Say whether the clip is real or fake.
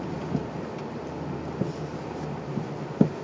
real